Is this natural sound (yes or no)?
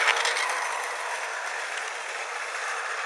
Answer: yes